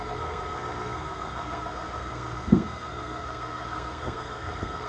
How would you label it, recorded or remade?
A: remade